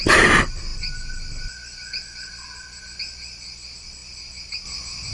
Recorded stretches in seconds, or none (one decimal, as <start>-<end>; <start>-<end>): 0.0-5.1